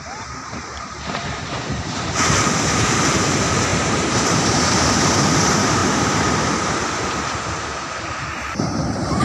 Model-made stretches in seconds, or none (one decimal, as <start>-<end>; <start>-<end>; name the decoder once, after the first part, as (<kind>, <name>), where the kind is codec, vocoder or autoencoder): 0.0-9.2 (vocoder, BigVGAN v2)